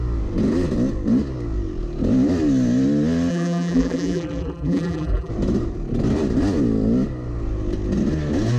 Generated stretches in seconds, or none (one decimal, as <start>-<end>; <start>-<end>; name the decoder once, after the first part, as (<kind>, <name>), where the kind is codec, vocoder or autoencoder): 3.3-5.3 (vocoder, BigVGAN v2)